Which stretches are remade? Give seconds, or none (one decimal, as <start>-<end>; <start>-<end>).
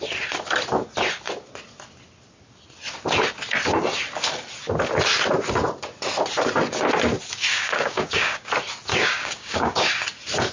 7.5-8.5; 8.9-9.9